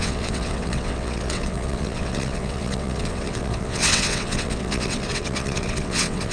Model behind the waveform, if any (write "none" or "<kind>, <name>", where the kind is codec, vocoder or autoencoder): vocoder, WaveNeXt